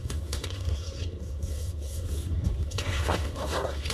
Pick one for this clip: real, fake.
fake